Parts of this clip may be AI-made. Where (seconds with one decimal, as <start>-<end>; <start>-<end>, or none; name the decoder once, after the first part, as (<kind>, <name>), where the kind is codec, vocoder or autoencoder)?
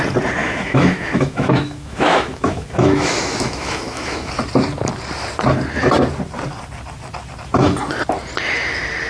0.4-4.3 (autoencoder, DAC-VAE)